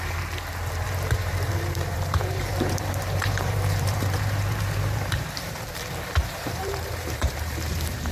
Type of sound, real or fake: fake